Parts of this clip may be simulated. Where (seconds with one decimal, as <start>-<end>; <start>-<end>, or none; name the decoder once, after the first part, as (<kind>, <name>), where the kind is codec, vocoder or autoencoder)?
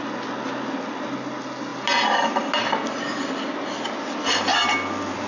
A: none